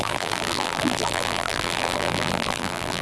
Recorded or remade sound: remade